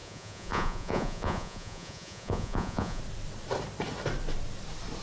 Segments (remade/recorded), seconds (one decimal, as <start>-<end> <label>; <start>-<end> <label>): 0.0-3.0 remade; 3.0-5.0 recorded